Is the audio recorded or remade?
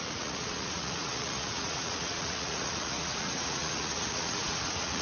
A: remade